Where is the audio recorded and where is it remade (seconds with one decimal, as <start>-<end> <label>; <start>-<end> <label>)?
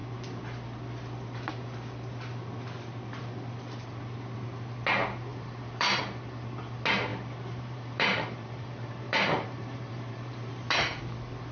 0.0-5.3 recorded; 5.3-6.0 remade; 6.0-7.1 recorded; 7.1-11.0 remade; 11.0-11.5 recorded